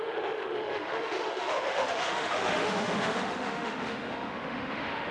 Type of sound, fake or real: fake